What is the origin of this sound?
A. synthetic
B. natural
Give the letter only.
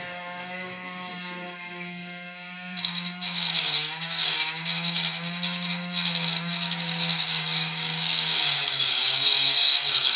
A